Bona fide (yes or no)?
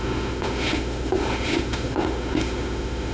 no